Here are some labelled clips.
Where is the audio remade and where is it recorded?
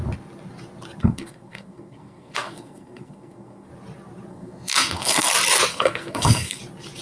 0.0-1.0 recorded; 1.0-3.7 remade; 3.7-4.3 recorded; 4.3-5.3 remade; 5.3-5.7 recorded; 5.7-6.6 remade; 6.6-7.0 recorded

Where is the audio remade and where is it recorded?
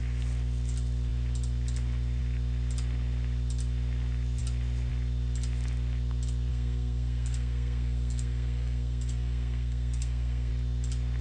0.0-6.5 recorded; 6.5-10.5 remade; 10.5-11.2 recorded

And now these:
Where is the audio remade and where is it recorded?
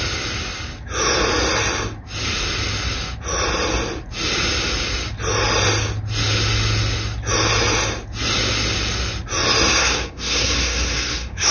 0.0-9.8 recorded; 9.8-11.5 remade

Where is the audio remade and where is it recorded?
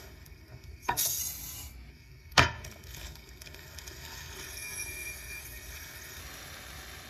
0.0-1.2 remade; 1.2-1.9 recorded; 1.9-6.2 remade; 6.2-7.1 recorded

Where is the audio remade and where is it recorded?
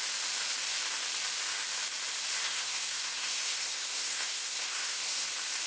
0.0-2.4 recorded; 2.4-5.3 remade; 5.3-5.7 recorded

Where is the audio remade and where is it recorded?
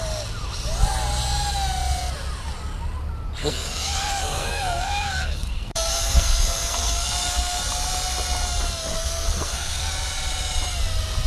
0.0-3.4 recorded; 3.4-7.6 remade; 7.6-8.9 recorded; 8.9-9.9 remade; 9.9-11.3 recorded